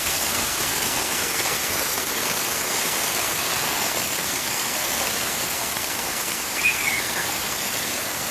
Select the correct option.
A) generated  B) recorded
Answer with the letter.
A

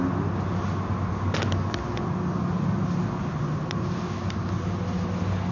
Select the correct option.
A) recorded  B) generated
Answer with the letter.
A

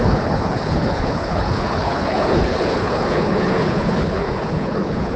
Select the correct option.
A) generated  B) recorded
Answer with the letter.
A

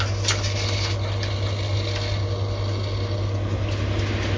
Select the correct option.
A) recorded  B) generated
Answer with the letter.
A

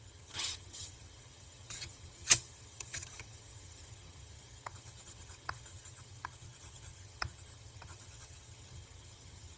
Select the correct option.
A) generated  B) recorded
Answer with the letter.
A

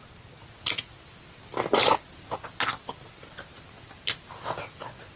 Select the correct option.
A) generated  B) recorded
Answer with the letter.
B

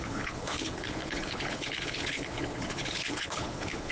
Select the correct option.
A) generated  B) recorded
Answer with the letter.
A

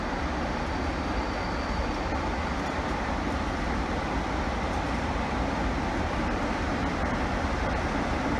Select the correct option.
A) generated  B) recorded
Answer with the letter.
B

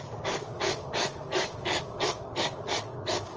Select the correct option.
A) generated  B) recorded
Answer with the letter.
A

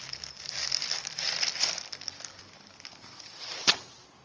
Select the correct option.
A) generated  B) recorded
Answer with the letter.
A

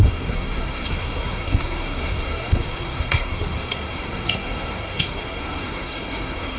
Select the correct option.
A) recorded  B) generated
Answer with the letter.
B